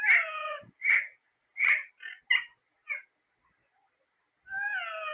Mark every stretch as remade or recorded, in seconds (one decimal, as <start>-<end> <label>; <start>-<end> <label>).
0.0-0.4 recorded; 0.4-1.9 remade; 1.9-5.1 recorded